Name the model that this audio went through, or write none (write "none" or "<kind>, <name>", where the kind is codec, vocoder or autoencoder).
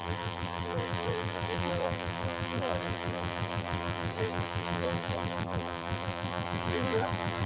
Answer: vocoder, BigVGAN v2